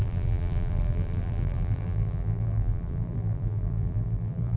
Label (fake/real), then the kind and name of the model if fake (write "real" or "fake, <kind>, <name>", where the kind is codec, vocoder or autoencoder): fake, vocoder, BigVGAN v2